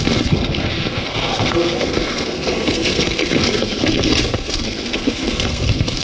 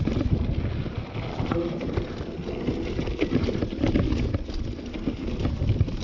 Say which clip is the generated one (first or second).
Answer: first